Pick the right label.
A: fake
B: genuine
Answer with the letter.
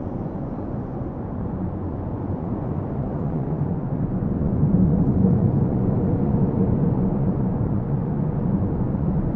A